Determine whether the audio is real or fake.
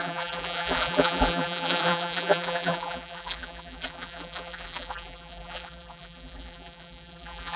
fake